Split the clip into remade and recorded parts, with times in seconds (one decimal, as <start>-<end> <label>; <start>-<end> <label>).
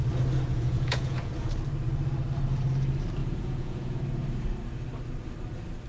0.0-0.5 recorded; 0.5-1.3 remade; 1.3-3.2 recorded; 3.2-4.0 remade; 4.0-5.9 recorded